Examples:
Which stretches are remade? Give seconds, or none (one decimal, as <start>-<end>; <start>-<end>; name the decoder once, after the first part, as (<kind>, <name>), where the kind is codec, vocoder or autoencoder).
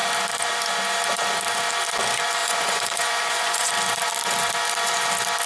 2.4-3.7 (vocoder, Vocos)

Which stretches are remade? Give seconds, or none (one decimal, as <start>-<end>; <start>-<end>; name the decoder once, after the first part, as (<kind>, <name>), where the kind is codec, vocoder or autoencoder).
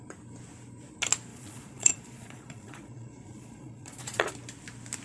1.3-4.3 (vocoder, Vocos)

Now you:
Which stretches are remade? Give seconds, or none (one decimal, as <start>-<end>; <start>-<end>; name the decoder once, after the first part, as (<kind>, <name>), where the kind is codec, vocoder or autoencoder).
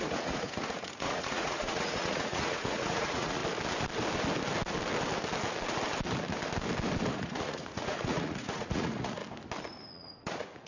0.0-3.4 (vocoder, Vocos); 7.0-9.2; 9.9-10.7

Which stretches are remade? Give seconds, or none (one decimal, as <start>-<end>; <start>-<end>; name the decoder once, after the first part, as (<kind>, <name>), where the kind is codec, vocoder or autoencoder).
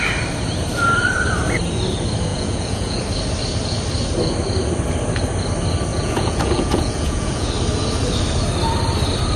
2.3-3.0 (vocoder, Vocos); 5.9-7.5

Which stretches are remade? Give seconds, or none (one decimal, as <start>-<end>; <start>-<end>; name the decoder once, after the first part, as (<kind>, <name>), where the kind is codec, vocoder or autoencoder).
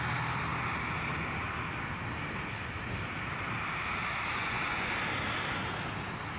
4.4-4.9 (vocoder, Vocos)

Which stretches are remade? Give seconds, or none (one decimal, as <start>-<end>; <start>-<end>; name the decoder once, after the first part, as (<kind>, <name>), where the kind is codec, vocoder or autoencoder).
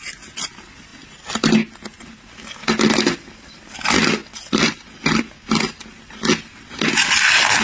none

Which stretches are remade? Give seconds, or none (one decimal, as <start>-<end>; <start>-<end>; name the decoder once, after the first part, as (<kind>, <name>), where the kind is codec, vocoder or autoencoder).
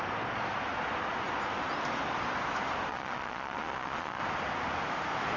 2.9-4.2 (vocoder, Vocos)